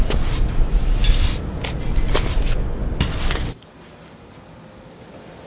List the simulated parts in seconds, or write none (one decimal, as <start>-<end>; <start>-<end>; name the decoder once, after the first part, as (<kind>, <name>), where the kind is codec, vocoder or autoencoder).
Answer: 0.0-1.0 (vocoder, BigVGAN v2); 2.3-2.8; 3.3-5.5